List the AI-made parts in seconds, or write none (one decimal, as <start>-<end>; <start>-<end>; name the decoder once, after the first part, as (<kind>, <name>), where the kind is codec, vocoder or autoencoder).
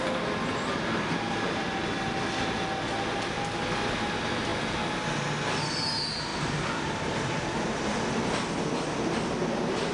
none